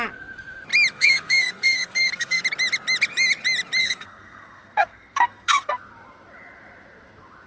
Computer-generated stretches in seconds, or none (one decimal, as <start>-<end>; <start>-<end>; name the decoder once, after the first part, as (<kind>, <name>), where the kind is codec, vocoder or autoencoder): 0.9-2.4 (codec, SNAC); 3.8-5.8